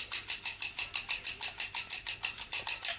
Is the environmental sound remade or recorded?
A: recorded